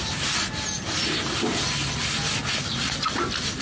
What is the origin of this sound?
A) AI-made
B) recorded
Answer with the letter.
B